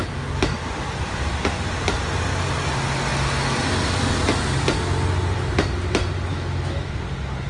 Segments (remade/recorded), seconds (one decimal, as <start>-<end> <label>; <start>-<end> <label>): 0.0-6.3 recorded; 6.3-6.9 remade; 6.9-7.5 recorded